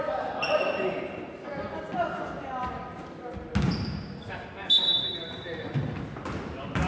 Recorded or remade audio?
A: recorded